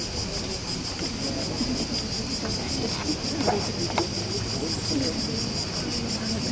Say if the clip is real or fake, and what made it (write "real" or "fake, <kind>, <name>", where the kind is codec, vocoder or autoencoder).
real